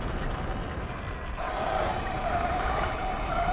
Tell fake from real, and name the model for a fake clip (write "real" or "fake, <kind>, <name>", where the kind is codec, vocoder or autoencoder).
real